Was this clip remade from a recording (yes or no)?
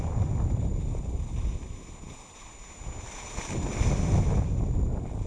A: no